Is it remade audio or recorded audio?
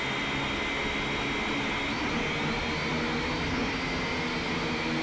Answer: recorded